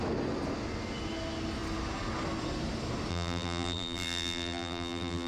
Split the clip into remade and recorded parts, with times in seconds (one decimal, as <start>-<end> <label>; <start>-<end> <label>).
0.0-3.1 recorded; 3.1-5.3 remade